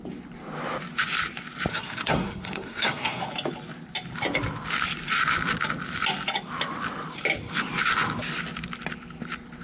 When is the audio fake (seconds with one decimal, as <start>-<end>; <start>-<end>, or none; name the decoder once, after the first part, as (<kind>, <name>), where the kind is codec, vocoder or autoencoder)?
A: 1.7-3.3 (codec, SNAC)